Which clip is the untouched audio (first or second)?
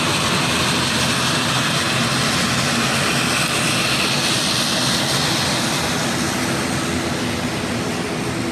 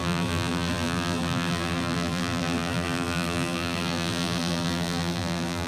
first